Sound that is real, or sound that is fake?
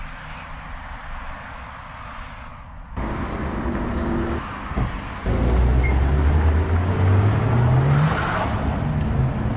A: real